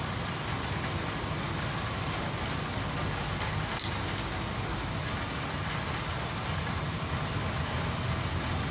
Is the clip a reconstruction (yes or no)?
no